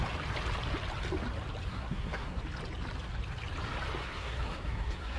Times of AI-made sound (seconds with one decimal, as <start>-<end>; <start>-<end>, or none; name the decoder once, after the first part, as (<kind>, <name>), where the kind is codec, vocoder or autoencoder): 1.7-2.4 (codec, SNAC); 4.0-5.2